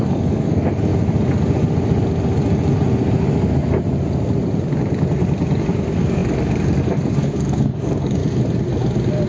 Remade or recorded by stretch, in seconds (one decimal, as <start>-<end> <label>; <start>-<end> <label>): 0.0-0.9 remade; 0.9-5.6 recorded; 5.6-8.2 remade; 8.2-9.3 recorded